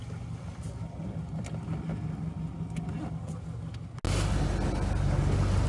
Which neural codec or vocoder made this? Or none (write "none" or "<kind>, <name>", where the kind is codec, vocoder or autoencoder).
none